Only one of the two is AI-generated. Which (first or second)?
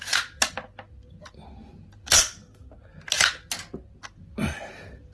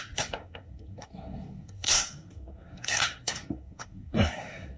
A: second